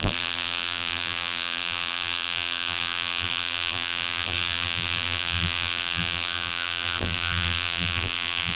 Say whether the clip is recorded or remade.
remade